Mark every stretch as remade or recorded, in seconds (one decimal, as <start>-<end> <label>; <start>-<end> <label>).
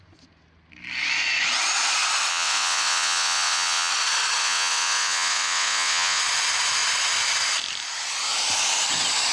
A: 0.0-2.3 recorded; 2.3-3.9 remade; 3.9-4.4 recorded; 4.4-6.2 remade; 6.2-9.3 recorded